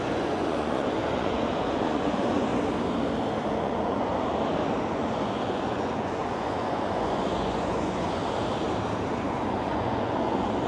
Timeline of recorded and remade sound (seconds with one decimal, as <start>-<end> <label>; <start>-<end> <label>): 0.0-2.5 remade; 2.5-3.5 recorded; 3.5-4.1 remade; 4.1-4.9 recorded; 4.9-8.2 remade; 8.2-9.1 recorded; 9.1-10.7 remade